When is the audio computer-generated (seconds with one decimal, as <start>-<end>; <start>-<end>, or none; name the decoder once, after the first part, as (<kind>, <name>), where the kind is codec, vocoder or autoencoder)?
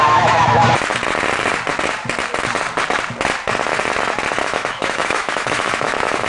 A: 0.0-0.6 (autoencoder, DAC-VAE); 4.4-6.3